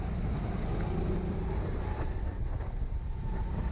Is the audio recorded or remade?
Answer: remade